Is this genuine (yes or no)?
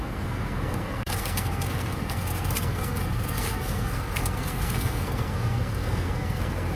no